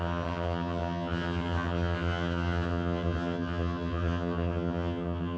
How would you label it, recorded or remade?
remade